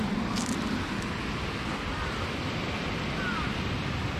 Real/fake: real